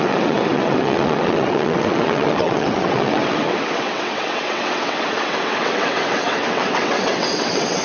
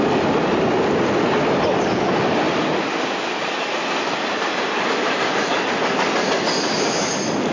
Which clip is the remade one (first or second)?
first